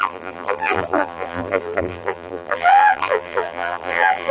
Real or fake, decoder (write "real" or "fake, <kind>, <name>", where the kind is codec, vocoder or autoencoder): fake, vocoder, BigVGAN v2